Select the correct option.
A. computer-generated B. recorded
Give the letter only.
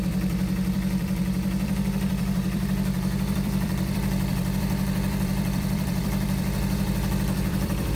A